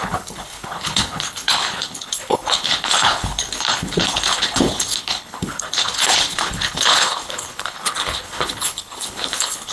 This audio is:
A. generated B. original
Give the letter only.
A